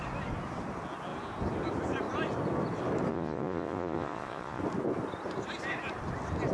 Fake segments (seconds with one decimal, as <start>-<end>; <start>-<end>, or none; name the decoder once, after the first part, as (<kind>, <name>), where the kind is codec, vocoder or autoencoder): 3.1-4.6 (vocoder, Vocos)